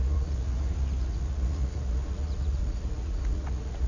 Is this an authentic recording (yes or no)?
no